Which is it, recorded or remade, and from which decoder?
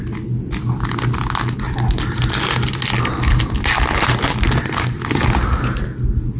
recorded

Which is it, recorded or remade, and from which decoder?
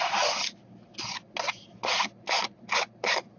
recorded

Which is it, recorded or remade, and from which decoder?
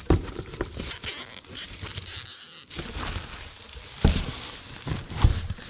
recorded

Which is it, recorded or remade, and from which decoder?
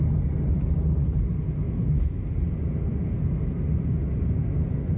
recorded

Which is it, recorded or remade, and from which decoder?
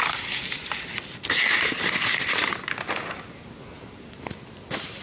recorded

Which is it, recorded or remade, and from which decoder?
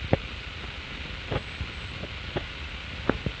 recorded